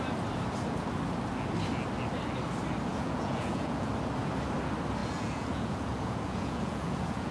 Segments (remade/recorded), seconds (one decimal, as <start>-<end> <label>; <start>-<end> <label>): 0.0-2.9 recorded; 2.9-3.9 remade; 3.9-5.0 recorded; 5.0-7.3 remade